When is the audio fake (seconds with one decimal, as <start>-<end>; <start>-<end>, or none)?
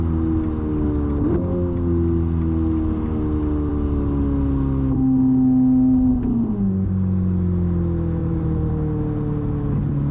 8.2-8.7